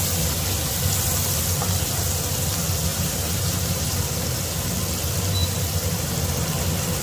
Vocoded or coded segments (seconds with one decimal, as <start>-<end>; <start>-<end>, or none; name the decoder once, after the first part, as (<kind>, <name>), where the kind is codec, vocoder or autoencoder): 2.9-4.0 (vocoder, BigVGAN v2); 5.4-6.1